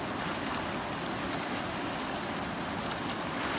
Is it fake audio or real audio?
real